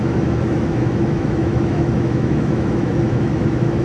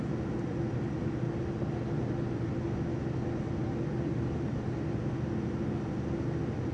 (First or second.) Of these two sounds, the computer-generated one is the first